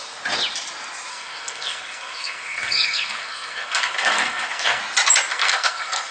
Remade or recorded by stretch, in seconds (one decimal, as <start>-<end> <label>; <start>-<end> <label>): 0.0-1.1 recorded; 1.1-4.8 remade; 4.8-5.3 recorded; 5.3-6.1 remade

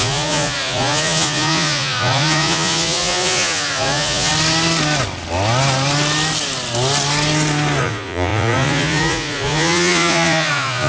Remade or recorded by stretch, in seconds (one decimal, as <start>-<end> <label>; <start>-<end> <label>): 0.0-4.3 remade; 4.3-7.8 recorded; 7.8-10.9 remade

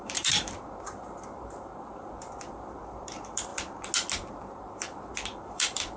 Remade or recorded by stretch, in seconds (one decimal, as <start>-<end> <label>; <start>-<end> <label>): 0.0-3.5 remade; 3.5-4.3 recorded; 4.3-6.0 remade

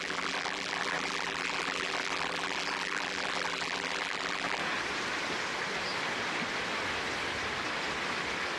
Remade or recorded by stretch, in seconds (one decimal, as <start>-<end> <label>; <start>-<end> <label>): 0.0-4.6 remade; 4.6-8.6 recorded

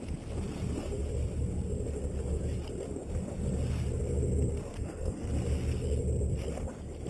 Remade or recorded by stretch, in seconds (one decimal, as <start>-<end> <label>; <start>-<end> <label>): 0.0-4.7 recorded; 4.7-5.3 remade; 5.3-7.1 recorded